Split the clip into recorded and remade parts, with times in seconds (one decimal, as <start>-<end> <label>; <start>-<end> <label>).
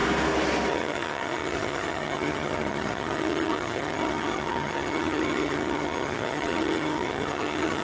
0.0-0.7 recorded; 0.7-7.8 remade